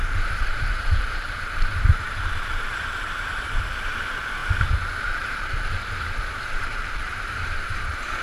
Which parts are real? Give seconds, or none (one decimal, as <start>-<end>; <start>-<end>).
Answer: 4.4-5.0